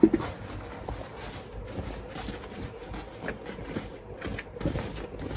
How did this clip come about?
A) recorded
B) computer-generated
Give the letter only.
A